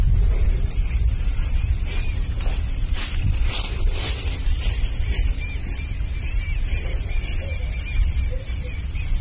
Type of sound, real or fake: fake